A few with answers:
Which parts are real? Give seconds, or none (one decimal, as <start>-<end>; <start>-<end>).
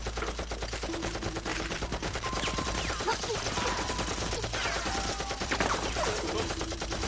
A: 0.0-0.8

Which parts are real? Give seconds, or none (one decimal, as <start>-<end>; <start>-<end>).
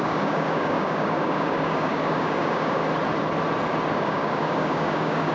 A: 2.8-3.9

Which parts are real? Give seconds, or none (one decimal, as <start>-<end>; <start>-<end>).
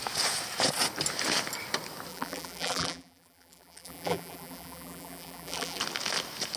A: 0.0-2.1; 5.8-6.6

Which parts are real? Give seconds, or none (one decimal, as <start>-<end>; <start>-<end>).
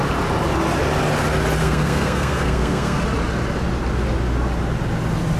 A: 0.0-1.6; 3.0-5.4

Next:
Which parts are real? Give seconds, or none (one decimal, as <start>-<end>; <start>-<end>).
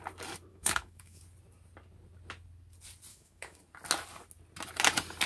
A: 0.0-0.5; 1.2-3.1; 3.6-5.3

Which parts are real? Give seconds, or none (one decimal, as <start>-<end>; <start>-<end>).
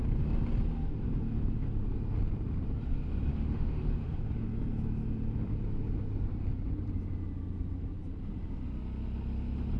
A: 0.0-3.3; 4.3-9.8